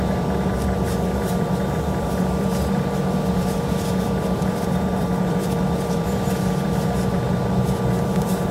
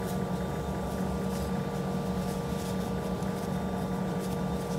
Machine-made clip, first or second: first